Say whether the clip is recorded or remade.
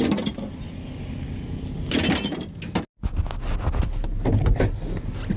recorded